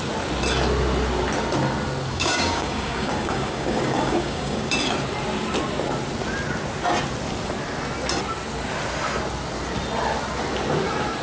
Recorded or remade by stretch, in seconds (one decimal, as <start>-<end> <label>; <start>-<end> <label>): 0.0-2.1 recorded; 2.1-4.7 remade; 4.7-11.2 recorded